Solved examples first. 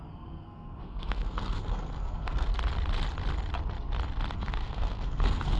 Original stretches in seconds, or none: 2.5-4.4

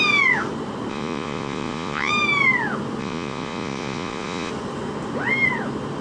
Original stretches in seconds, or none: 0.0-0.9; 2.1-3.0; 4.5-6.0

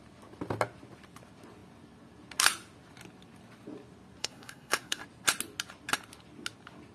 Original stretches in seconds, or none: 0.0-4.2; 5.0-6.9

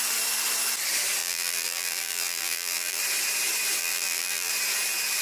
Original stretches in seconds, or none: 0.0-1.2; 3.0-3.8; 4.5-5.2

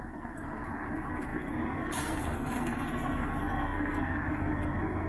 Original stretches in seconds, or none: none

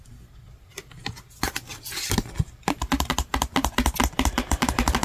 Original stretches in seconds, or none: 0.0-5.0

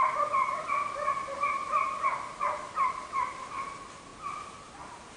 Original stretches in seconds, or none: 0.0-1.4; 2.1-4.1

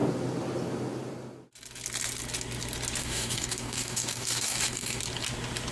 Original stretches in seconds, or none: 0.0-3.0; 5.0-5.7